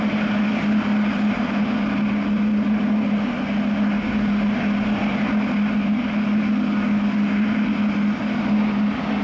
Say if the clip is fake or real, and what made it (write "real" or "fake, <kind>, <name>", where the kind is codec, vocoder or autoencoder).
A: real